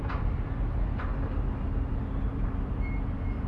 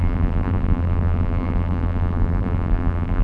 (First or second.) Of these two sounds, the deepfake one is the second